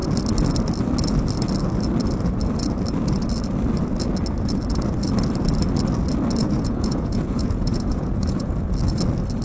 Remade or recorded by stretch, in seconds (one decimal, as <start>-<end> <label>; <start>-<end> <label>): 0.0-6.4 recorded; 6.4-8.5 remade; 8.5-9.4 recorded